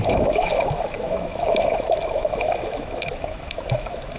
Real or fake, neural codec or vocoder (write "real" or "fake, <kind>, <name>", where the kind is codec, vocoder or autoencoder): fake, autoencoder, DAC-VAE